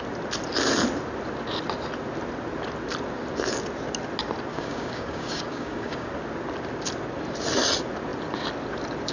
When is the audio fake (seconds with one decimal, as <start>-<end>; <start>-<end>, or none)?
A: 4.5-6.1